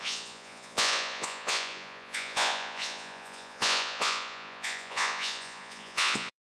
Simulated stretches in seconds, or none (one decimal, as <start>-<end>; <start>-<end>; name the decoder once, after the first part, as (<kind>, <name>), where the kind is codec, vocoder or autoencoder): 0.0-6.5 (vocoder, Vocos)